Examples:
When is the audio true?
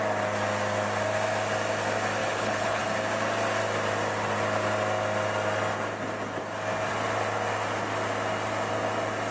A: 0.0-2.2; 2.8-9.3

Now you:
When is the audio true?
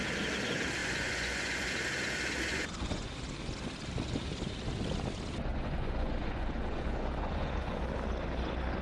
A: 0.0-0.8; 1.7-2.5; 3.1-5.5; 7.8-8.8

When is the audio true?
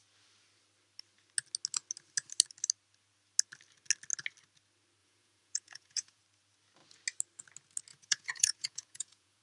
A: 0.0-5.0; 6.2-7.9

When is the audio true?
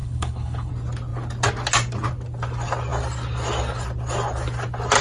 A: 0.7-5.0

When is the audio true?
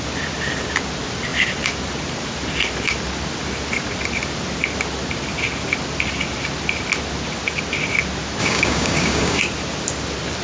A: 0.0-8.4; 9.4-10.4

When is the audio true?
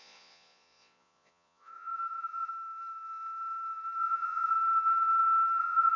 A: 2.5-4.0; 4.5-5.6